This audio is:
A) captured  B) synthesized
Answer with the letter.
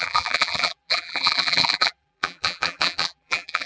B